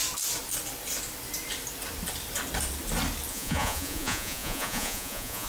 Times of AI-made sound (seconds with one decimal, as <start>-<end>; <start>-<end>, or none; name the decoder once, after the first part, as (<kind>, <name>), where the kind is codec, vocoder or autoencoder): 3.3-5.5 (vocoder, Vocos)